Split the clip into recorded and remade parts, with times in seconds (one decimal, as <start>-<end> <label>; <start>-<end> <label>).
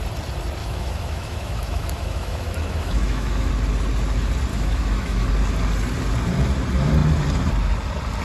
0.0-0.6 recorded; 0.6-3.5 remade; 3.5-4.5 recorded; 4.5-5.3 remade; 5.3-8.2 recorded